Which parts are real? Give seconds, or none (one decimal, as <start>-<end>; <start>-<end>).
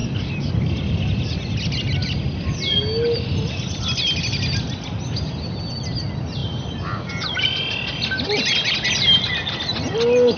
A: 0.0-10.4